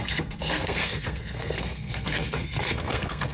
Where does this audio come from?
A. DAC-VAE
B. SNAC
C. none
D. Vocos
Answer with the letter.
B